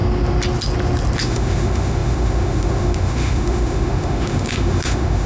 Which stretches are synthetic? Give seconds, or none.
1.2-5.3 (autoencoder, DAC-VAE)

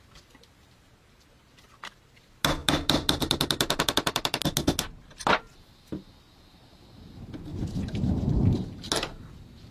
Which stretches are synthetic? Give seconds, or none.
2.6-4.4 (vocoder, BigVGAN v2); 7.5-8.2

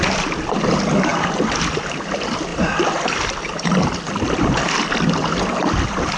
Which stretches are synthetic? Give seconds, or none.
none

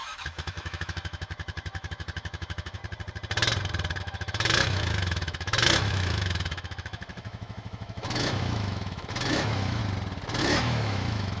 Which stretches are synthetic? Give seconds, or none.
0.0-2.8 (autoencoder, DAC-VAE); 4.0-9.8; 10.4-11.4